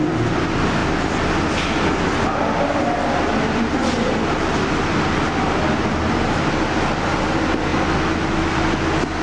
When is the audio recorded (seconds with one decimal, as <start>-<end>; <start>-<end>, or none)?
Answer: 0.0-9.2